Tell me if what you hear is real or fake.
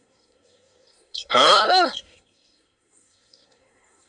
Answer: fake